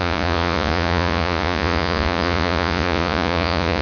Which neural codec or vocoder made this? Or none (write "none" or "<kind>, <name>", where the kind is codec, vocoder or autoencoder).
vocoder, Vocos